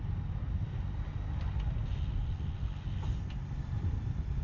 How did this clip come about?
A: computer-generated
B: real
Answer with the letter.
B